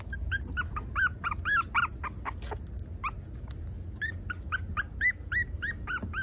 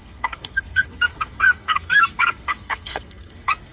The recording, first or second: first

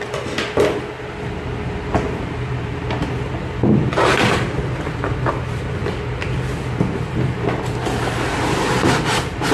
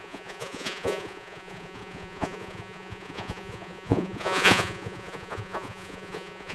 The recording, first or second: first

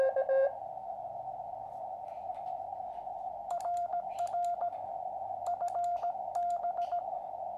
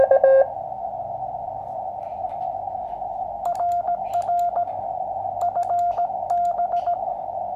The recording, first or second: second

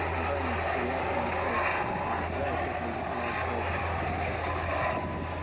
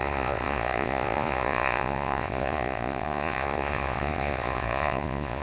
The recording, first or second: first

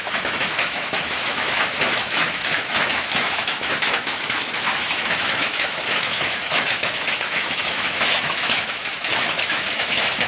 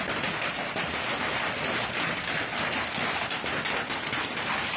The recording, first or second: second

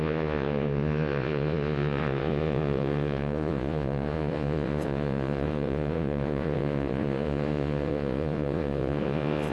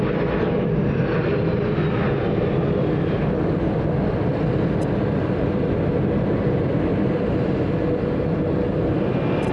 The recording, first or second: second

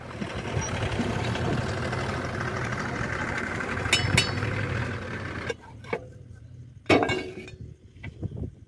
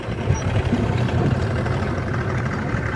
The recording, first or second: first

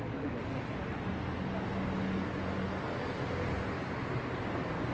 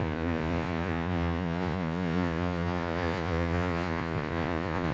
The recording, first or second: first